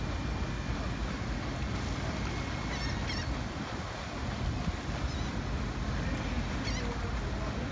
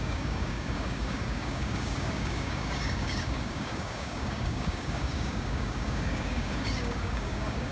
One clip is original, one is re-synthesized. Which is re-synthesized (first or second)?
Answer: second